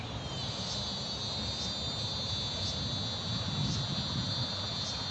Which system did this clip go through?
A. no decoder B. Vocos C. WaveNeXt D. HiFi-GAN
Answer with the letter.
A